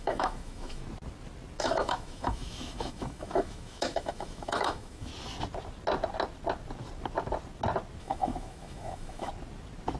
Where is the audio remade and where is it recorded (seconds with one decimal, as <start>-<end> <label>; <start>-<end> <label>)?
0.0-0.8 remade; 0.8-1.6 recorded; 1.6-5.1 remade; 5.1-8.0 recorded; 8.0-9.3 remade; 9.3-10.0 recorded